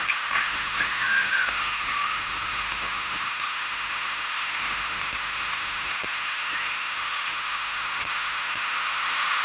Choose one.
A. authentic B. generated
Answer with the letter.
B